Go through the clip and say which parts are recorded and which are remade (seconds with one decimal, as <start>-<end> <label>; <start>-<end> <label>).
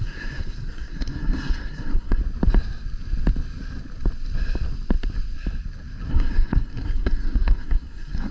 0.0-2.2 remade; 2.2-6.1 recorded; 6.1-8.3 remade